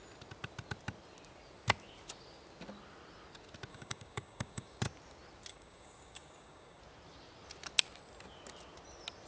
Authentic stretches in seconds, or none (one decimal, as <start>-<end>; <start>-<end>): 0.0-3.7; 4.8-5.5; 6.8-9.3